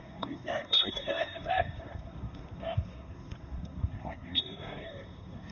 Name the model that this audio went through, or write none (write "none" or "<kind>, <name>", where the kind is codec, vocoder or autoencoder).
codec, SNAC